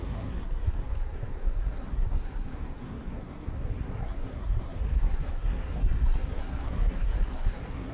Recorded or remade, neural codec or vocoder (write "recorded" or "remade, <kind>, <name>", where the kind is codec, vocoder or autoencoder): remade, codec, SNAC